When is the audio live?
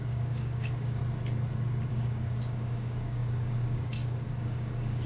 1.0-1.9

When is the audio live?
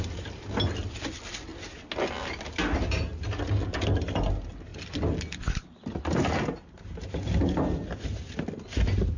0.0-9.2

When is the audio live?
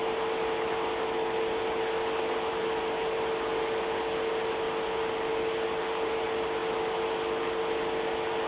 0.0-8.5